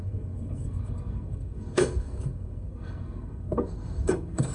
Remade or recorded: remade